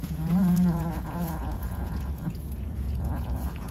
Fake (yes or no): yes